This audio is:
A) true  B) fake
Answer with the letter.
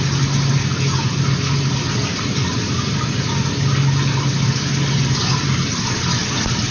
A